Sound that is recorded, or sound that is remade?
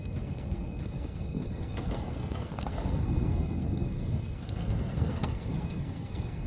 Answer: remade